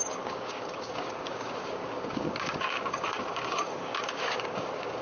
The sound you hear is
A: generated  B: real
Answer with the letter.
A